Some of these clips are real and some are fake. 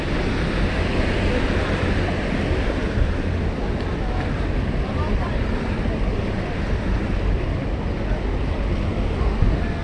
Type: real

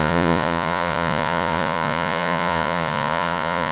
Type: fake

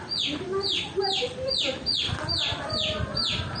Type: real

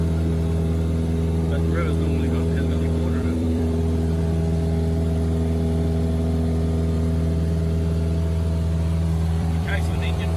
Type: fake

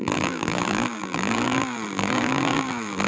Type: fake